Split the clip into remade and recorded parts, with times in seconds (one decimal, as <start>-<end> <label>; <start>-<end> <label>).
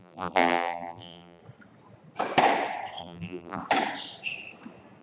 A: 0.0-1.4 remade; 1.4-3.0 recorded; 3.0-3.6 remade; 3.6-5.0 recorded